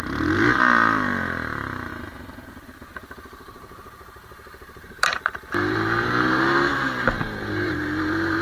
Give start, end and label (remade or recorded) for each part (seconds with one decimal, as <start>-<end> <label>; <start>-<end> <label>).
0.0-1.9 remade; 1.9-2.5 recorded; 2.5-8.4 remade